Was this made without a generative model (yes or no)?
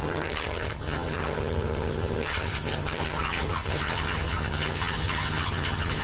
no